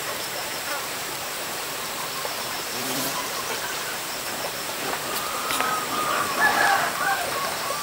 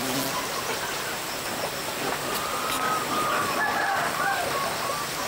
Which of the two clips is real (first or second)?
second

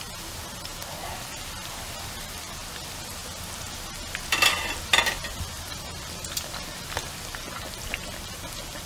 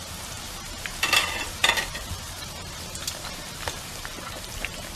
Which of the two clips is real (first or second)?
first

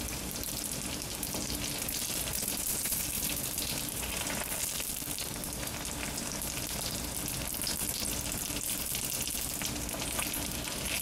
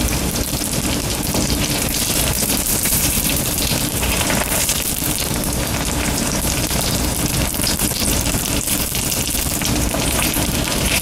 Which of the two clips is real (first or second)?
first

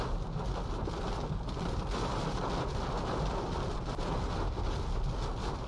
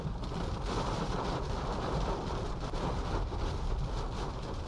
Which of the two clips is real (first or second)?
first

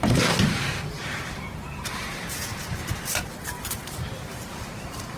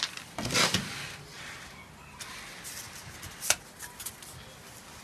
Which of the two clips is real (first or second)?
second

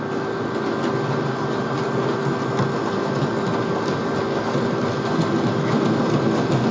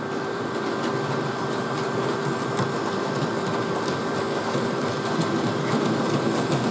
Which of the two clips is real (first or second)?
first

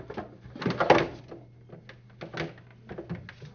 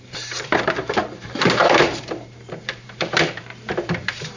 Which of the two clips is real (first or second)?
first